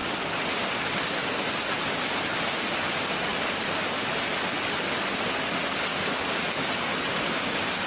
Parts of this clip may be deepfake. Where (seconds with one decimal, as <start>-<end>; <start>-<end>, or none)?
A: none